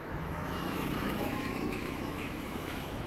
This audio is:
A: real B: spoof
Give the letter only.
B